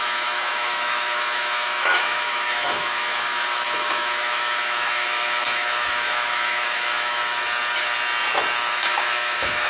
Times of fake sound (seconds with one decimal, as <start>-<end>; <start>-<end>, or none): 0.0-7.2; 8.7-9.7